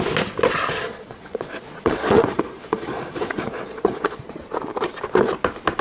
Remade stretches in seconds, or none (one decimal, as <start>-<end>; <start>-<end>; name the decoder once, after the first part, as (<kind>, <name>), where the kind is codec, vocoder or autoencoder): 0.9-4.4 (vocoder, Vocos)